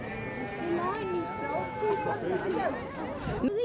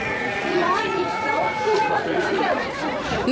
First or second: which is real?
first